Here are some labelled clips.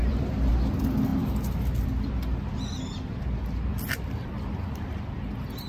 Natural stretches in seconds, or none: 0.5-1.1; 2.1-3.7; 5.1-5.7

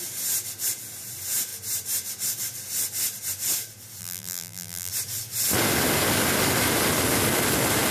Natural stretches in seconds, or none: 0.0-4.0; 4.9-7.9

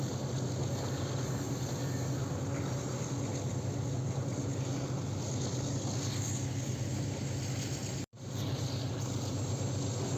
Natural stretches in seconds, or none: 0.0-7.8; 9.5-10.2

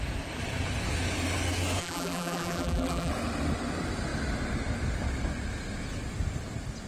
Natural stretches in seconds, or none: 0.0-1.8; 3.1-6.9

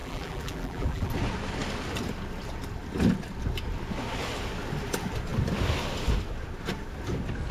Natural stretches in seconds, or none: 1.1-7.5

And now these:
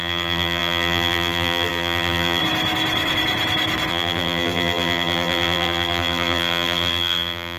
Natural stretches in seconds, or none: 2.4-3.9

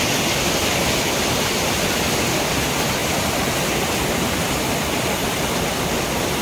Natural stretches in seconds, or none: 0.0-0.6; 2.6-6.4